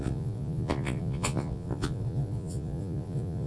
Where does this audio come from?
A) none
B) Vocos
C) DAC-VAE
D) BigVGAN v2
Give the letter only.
B